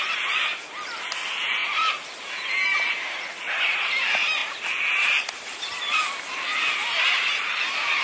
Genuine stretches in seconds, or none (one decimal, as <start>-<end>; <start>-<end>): 0.0-1.6; 2.9-4.4; 6.2-8.0